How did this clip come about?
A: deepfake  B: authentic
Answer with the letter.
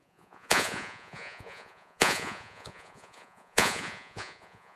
A